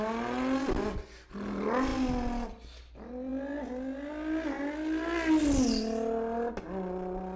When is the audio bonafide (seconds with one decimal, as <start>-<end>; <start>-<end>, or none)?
0.0-7.4

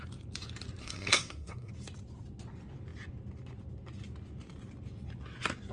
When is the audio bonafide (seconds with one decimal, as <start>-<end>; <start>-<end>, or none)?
0.0-0.8; 1.7-5.7

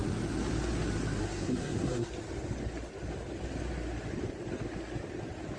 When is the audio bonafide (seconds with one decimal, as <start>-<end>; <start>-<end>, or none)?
0.0-1.2; 2.1-5.6